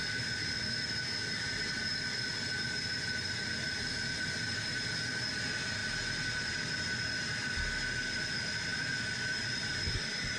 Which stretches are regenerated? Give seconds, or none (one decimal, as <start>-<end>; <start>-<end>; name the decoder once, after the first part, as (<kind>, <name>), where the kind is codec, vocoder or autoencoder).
8.7-9.9 (vocoder, BigVGAN v2)